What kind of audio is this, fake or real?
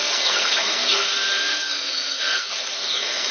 fake